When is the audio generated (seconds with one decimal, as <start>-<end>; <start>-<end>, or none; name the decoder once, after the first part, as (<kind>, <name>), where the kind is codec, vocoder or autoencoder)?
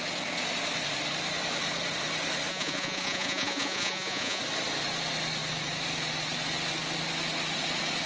2.5-4.4 (vocoder, Vocos)